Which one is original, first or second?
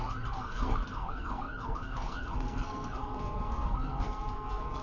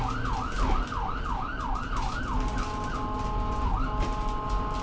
second